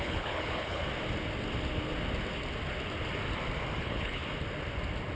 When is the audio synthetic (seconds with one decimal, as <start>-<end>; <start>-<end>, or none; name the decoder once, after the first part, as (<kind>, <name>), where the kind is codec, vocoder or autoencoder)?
0.0-0.8 (codec, HILCodec); 3.8-4.2